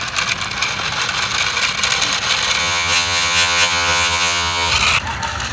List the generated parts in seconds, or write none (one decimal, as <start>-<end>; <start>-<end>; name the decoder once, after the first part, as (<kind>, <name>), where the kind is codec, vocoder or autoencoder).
2.6-4.7 (vocoder, HiFi-GAN)